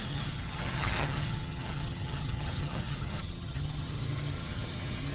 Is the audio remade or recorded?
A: remade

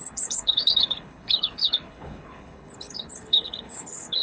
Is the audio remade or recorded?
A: remade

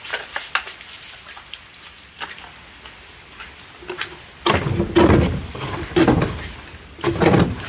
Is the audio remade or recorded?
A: recorded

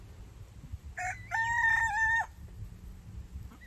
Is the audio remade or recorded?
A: recorded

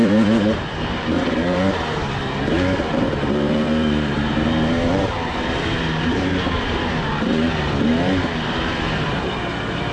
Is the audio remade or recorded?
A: remade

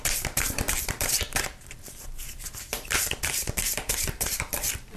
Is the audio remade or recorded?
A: remade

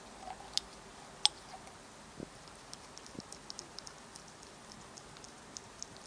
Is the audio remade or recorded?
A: recorded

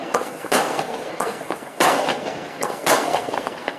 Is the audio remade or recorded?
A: remade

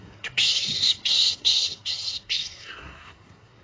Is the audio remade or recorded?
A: remade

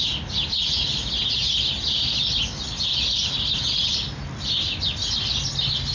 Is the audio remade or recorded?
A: recorded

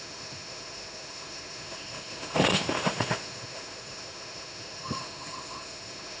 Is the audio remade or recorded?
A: remade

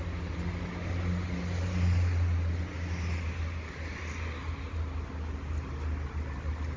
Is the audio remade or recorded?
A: recorded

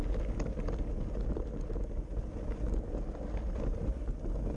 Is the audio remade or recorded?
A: recorded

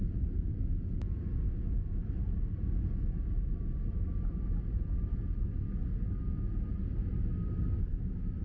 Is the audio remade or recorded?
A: recorded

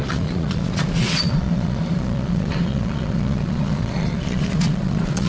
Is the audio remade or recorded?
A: remade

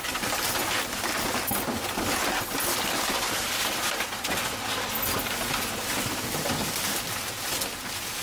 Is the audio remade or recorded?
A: remade